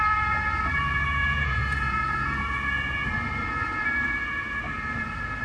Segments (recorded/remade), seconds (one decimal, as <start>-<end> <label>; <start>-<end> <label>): 0.0-1.2 recorded; 1.2-2.4 remade; 2.4-5.4 recorded

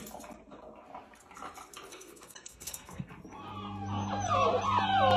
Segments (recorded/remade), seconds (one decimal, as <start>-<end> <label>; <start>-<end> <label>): 0.0-1.9 recorded; 1.9-3.1 remade; 3.1-5.2 recorded

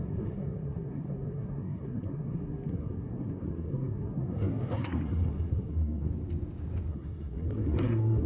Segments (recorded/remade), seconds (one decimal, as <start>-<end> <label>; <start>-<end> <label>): 0.0-6.1 remade; 6.1-6.9 recorded; 6.9-8.3 remade

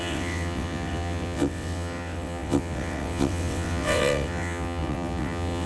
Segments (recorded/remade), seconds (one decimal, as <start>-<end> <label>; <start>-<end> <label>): 0.0-5.7 remade

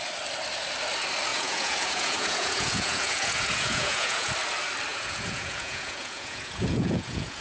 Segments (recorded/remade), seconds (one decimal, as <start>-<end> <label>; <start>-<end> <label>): 0.0-1.3 recorded; 1.3-4.3 remade; 4.3-4.9 recorded; 4.9-7.4 remade